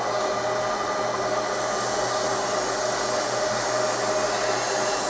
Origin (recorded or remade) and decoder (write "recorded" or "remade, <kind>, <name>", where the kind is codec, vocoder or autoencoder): recorded